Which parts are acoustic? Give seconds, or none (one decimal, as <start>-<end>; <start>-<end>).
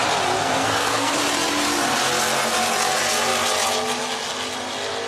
0.0-0.4; 1.1-5.1